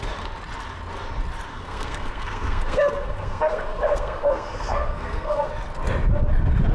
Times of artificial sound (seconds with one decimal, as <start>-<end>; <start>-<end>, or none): 1.5-5.5